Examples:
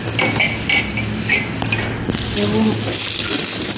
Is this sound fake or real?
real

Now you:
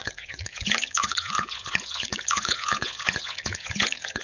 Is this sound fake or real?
fake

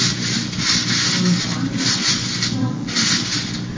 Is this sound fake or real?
real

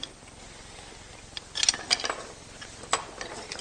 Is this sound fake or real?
real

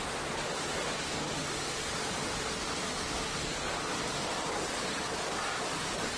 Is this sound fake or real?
real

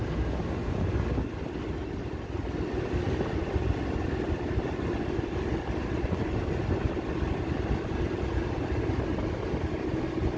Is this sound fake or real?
real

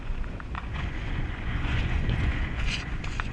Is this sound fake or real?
fake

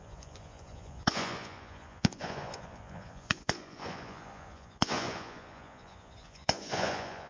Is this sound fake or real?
fake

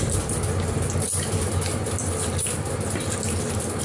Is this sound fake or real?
real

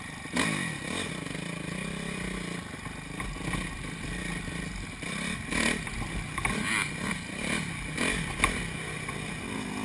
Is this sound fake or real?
real